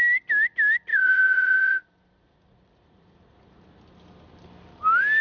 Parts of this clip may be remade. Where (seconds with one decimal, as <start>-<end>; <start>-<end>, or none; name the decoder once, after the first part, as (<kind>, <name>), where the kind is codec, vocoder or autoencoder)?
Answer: 0.9-3.8 (vocoder, Vocos)